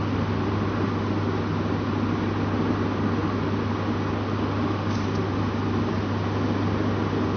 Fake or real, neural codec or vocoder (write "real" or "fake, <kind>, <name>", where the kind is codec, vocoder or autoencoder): real